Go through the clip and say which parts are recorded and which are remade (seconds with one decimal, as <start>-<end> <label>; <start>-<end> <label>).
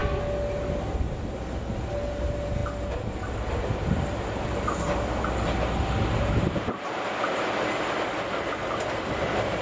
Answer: 0.0-9.6 recorded